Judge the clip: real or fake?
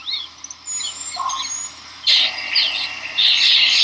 real